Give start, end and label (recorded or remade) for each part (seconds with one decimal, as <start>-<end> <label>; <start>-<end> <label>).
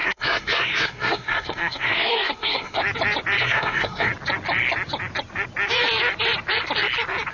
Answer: 0.0-2.8 remade; 2.8-3.4 recorded; 3.4-4.1 remade; 4.1-7.3 recorded